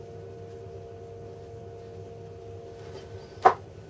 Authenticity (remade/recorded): recorded